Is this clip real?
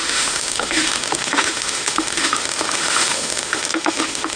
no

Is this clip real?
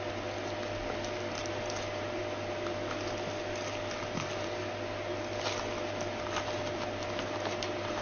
yes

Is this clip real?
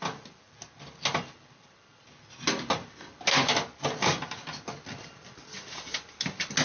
yes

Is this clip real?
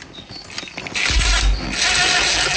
yes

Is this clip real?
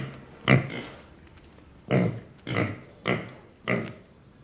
yes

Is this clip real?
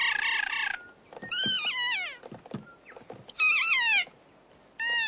yes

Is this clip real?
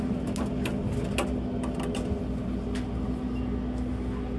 yes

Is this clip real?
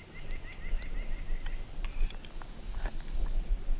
yes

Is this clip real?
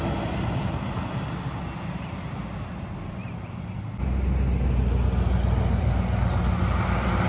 yes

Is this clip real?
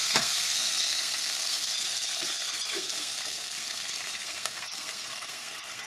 no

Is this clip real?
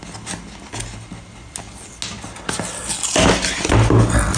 yes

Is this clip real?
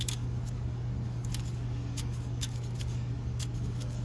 no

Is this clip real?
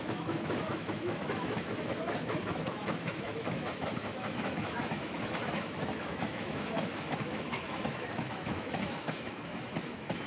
no